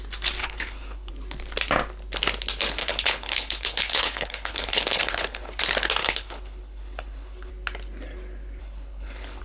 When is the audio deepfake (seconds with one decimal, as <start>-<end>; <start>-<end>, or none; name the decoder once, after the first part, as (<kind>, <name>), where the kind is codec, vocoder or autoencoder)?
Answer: 0.4-1.1 (codec, HILCodec); 2.8-5.6; 6.0-7.5; 8.6-9.4